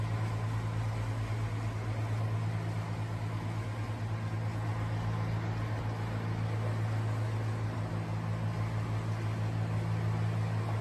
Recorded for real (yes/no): yes